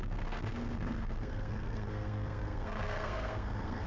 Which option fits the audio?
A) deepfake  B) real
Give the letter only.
A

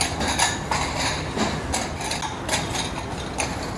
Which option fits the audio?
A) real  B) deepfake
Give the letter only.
A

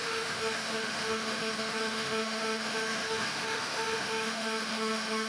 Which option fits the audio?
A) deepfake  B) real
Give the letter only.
A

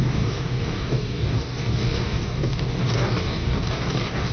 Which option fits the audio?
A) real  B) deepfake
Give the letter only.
B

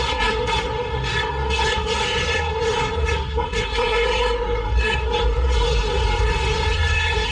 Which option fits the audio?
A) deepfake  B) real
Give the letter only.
A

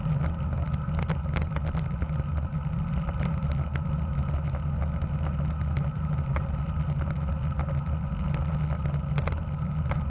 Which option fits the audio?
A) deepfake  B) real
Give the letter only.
B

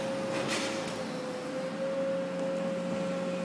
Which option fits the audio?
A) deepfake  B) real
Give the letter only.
B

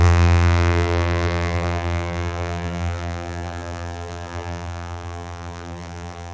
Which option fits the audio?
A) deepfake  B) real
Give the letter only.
A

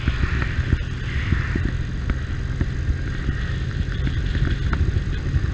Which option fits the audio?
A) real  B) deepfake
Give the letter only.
A